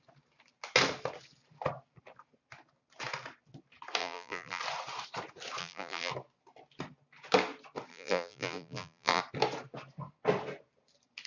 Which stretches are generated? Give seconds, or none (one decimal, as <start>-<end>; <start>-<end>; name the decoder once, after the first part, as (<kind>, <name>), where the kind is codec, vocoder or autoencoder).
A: 4.0-4.6 (vocoder, BigVGAN v2); 5.6-6.1; 7.9-9.2